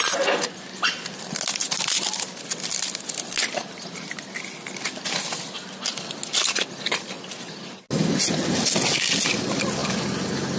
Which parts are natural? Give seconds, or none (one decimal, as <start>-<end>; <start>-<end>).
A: 0.0-10.6